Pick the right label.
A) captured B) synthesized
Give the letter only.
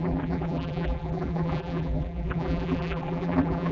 B